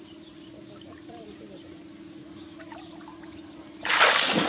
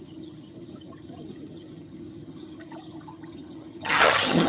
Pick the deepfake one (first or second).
second